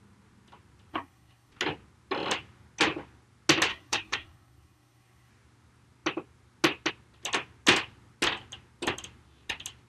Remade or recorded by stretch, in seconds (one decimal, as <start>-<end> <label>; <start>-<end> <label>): 0.0-0.9 recorded; 0.9-1.5 remade; 1.5-3.7 recorded; 3.7-5.3 remade; 5.3-9.9 recorded